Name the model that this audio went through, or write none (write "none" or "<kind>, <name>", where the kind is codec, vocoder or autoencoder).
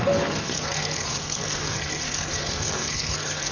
codec, SNAC